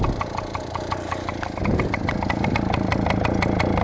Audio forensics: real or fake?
real